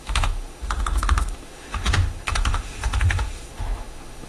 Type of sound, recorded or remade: remade